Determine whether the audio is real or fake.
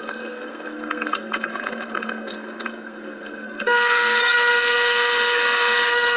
fake